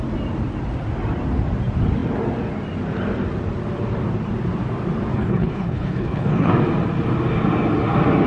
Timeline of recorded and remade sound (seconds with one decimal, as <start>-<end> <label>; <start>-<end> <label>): 0.0-5.1 recorded; 5.1-6.5 remade; 6.5-8.3 recorded